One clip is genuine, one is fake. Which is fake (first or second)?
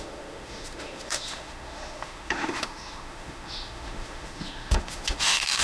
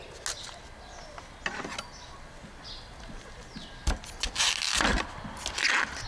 first